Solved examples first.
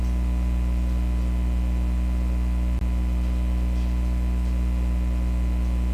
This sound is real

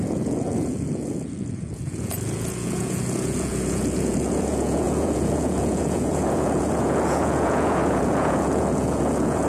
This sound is fake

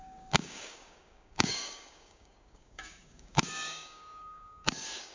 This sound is fake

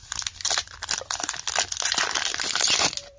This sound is real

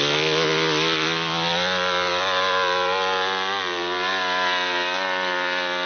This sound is real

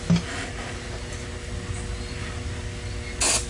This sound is real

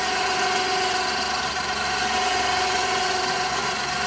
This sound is real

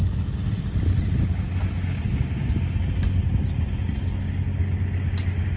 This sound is real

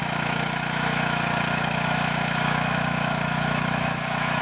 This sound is fake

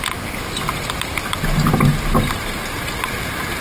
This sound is real